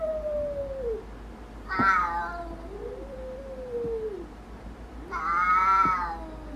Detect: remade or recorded recorded